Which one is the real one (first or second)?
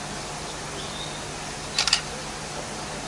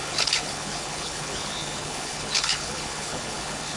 first